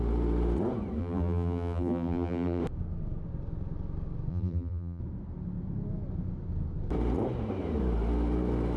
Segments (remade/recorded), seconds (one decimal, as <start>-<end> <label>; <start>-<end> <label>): 0.0-1.0 recorded; 1.0-2.6 remade; 2.6-4.3 recorded; 4.3-5.0 remade; 5.0-8.8 recorded